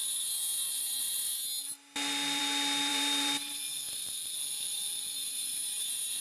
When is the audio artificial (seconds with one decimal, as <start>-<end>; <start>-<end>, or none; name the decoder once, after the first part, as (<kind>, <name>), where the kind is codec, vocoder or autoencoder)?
2.9-4.4 (vocoder, BigVGAN v2); 5.2-6.2